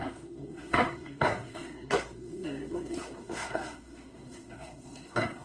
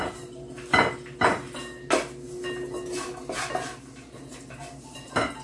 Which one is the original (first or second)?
second